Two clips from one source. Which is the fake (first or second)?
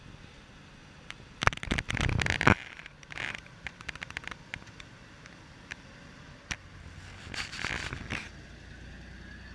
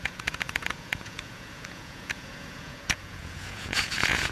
second